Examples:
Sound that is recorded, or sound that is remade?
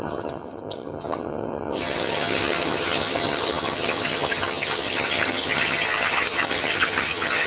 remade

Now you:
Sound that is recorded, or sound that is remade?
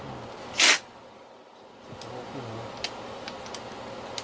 recorded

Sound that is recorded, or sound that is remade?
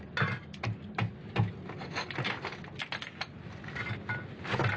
recorded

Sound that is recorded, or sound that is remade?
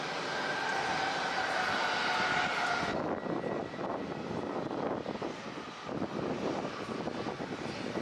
recorded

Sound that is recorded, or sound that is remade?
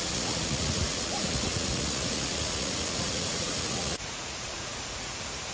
remade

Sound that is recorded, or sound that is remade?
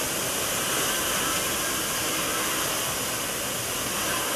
recorded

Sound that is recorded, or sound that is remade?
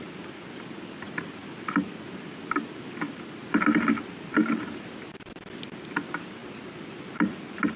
recorded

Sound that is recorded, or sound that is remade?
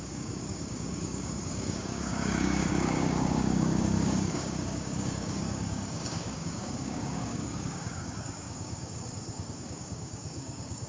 remade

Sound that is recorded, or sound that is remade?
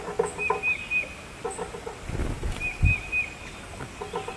recorded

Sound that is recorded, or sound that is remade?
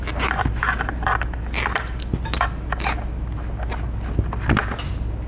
recorded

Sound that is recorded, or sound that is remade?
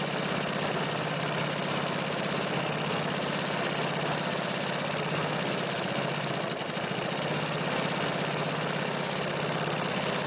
recorded